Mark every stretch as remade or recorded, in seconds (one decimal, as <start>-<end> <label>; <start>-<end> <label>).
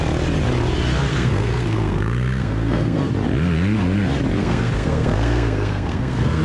0.0-1.1 recorded; 1.1-3.1 remade; 3.1-4.4 recorded; 4.4-6.4 remade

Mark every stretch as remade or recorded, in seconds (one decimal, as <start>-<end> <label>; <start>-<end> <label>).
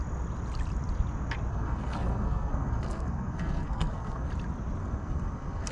0.0-1.5 recorded; 1.5-4.3 remade; 4.3-4.8 recorded; 4.8-5.7 remade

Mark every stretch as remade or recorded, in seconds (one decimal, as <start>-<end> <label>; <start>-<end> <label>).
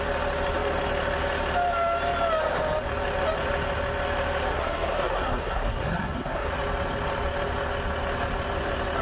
0.0-4.5 recorded; 4.5-6.5 remade; 6.5-9.0 recorded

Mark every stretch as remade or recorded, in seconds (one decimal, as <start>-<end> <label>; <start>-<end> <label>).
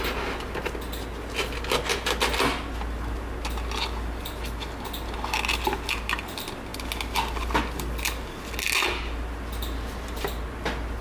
0.0-11.0 recorded